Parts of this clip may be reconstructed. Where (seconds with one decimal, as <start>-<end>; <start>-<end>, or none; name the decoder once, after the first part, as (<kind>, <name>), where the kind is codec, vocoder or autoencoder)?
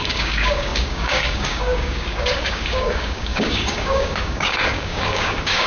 0.0-5.7 (codec, DAC)